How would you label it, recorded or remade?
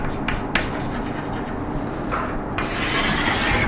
recorded